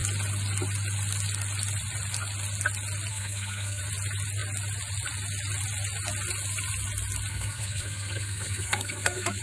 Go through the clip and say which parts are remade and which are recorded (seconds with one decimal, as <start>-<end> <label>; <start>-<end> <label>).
0.0-3.1 recorded; 3.1-3.8 remade; 3.8-7.3 recorded; 7.3-9.4 remade